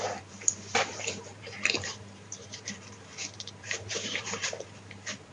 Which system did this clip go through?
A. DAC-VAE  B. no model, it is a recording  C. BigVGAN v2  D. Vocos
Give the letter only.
C